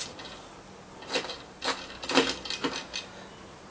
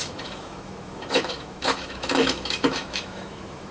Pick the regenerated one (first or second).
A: second